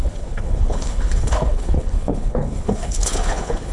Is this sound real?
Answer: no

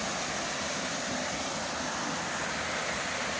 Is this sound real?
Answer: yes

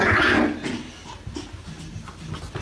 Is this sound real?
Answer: yes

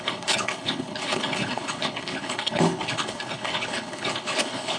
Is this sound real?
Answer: no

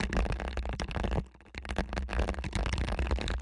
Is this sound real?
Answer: yes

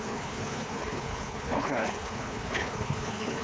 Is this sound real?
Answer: no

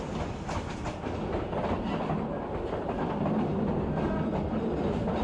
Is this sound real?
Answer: yes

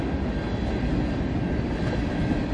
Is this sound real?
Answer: yes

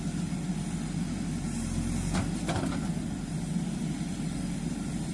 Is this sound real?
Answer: yes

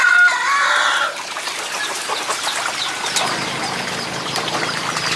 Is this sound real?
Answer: yes